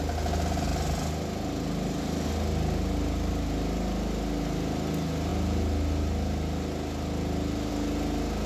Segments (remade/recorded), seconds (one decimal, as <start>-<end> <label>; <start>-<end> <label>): 0.0-8.5 recorded